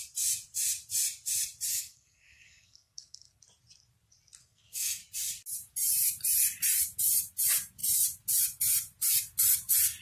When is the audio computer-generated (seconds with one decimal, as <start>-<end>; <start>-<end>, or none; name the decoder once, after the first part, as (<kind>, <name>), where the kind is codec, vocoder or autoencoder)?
1.7-3.4 (codec, SNAC); 4.4-5.0